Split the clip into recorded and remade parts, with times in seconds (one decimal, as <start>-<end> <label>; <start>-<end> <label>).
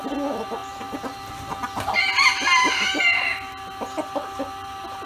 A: 0.0-5.1 recorded